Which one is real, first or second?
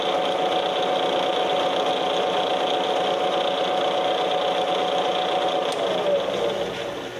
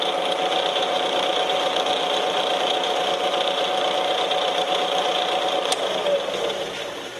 first